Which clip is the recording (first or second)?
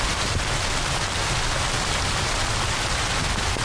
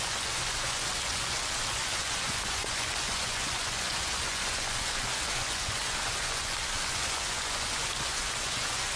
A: first